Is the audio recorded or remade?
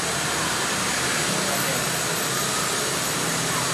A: recorded